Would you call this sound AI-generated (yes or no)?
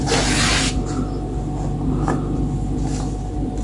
no